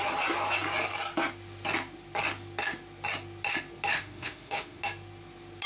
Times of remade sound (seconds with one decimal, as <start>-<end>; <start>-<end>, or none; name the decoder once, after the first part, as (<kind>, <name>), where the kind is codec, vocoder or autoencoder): 3.9-4.8 (autoencoder, DAC-VAE)